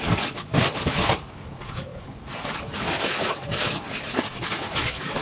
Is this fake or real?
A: fake